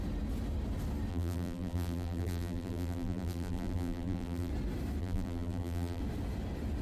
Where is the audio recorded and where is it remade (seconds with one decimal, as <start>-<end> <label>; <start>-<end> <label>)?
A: 0.0-1.1 recorded; 1.1-4.5 remade; 4.5-5.0 recorded; 5.0-6.0 remade; 6.0-6.8 recorded